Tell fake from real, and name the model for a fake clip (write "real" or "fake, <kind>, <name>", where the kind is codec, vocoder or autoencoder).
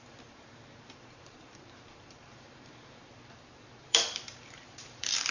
fake, vocoder, BigVGAN v2